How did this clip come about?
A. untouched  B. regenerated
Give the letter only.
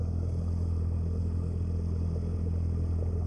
A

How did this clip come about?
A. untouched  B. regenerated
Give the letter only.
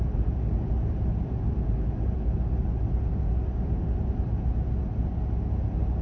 A